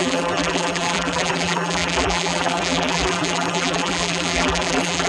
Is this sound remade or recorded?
remade